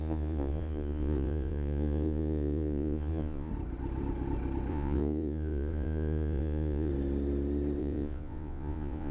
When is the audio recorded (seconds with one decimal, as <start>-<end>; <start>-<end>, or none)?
3.5-4.7; 6.9-7.8